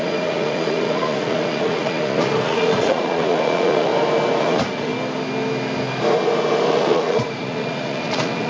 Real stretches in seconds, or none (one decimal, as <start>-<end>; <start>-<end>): 3.9-4.4; 4.9-6.7